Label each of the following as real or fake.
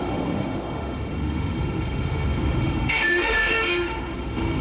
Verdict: fake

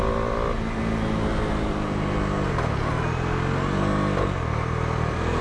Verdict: real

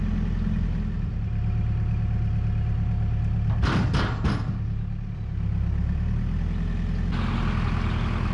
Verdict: real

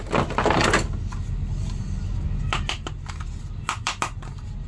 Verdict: real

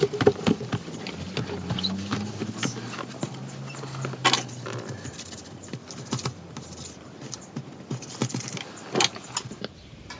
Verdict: real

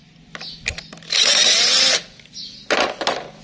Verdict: real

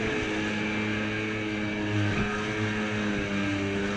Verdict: real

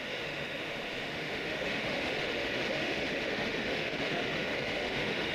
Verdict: fake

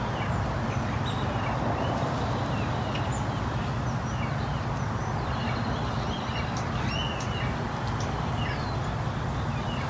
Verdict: real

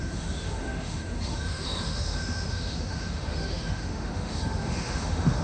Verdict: fake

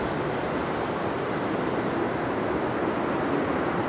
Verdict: real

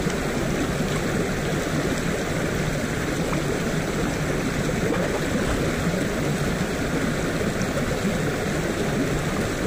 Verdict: real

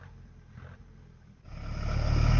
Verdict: real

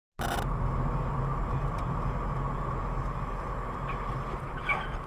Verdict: real